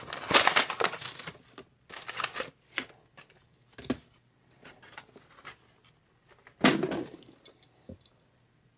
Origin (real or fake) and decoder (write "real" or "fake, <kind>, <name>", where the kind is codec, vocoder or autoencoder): real